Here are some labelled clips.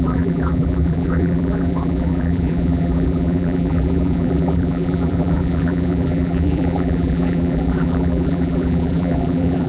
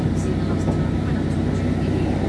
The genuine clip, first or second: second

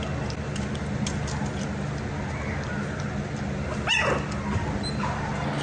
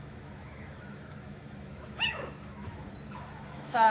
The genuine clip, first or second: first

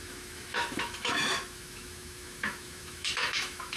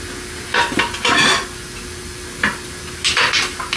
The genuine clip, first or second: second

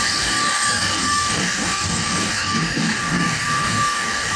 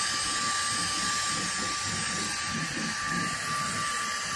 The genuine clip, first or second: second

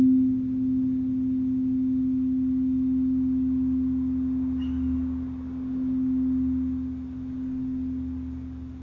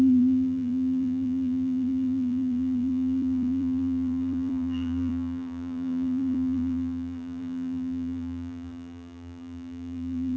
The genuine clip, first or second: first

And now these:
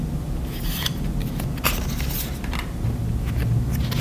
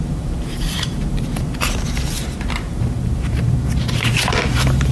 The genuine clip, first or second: first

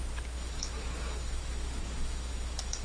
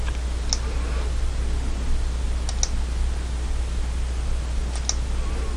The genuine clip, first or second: second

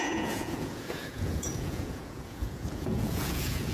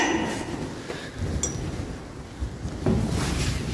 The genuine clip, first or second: second